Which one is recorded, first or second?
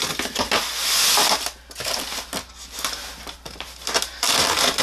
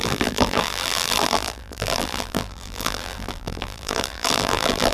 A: first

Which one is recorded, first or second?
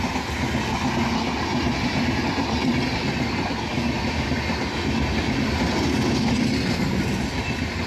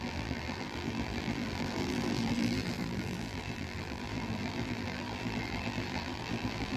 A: first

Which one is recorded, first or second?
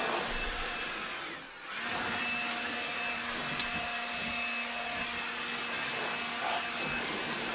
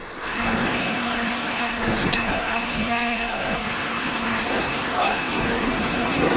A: first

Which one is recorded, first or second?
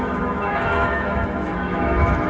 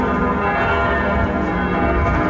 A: second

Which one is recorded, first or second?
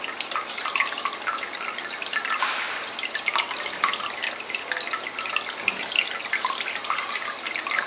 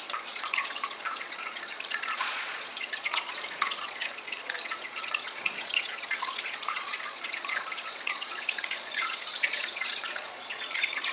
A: first